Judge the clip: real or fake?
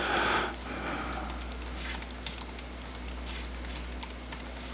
real